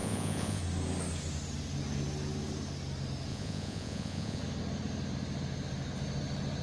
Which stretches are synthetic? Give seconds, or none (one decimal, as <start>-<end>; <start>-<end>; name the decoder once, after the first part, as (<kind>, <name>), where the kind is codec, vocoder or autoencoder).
0.0-0.6 (vocoder, Vocos); 3.3-4.4